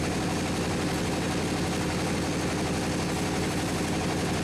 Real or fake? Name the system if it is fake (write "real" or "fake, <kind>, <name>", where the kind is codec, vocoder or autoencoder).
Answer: real